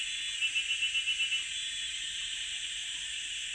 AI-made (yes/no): yes